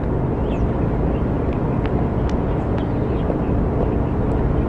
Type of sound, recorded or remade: recorded